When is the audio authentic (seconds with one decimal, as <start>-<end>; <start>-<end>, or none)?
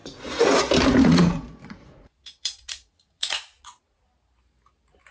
0.5-1.0; 4.1-5.1